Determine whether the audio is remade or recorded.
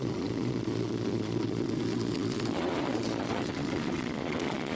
remade